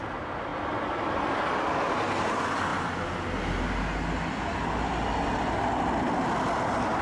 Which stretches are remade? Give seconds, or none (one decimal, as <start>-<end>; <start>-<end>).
none